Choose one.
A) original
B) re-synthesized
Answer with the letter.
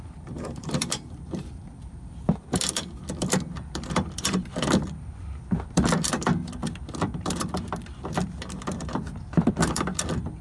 B